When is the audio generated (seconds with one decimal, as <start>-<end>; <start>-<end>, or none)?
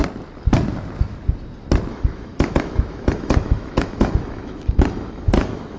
1.9-5.8